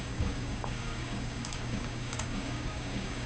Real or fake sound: fake